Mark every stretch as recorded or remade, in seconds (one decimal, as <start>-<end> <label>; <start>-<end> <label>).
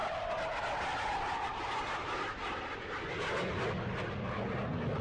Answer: 0.0-5.0 recorded